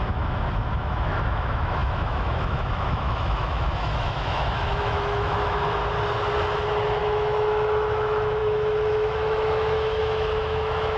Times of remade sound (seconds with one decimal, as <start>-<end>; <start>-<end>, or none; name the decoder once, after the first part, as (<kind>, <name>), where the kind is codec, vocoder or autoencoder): 0.0-5.8 (autoencoder, DAC-VAE); 7.0-11.0